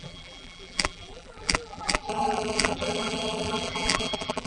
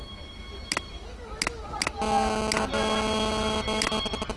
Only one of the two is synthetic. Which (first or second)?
first